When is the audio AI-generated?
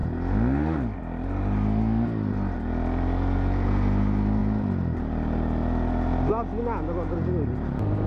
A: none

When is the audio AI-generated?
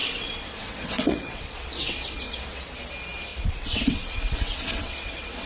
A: 0.0-2.6; 3.3-5.5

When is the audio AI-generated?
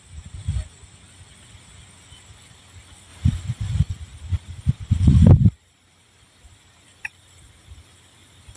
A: none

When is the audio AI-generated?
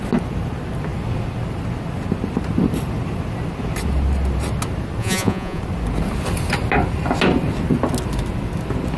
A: 5.0-5.6